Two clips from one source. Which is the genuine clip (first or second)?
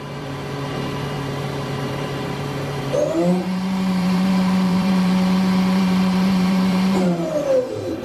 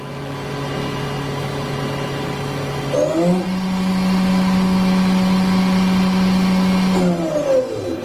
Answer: second